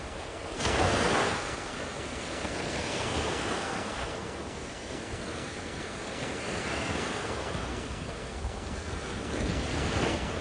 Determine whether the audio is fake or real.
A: fake